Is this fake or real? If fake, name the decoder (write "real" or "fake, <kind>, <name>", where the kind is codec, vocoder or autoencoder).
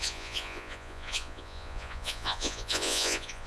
fake, vocoder, Vocos